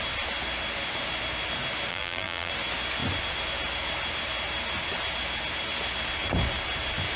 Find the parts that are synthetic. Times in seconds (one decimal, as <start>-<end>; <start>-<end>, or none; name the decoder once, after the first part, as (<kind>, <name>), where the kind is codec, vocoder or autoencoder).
1.9-2.5 (vocoder, BigVGAN v2)